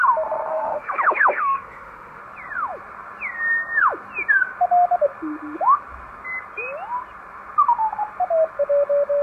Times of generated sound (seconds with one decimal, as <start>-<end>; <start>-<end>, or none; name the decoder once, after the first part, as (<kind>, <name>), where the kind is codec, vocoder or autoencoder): 0.5-2.2 (autoencoder, DAC-VAE)